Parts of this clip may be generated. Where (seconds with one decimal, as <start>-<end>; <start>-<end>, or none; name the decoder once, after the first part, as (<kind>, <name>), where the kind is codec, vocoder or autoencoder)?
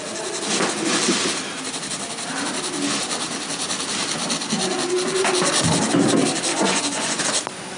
6.5-7.2 (vocoder, Vocos)